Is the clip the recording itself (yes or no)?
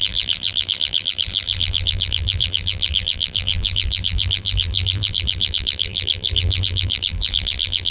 no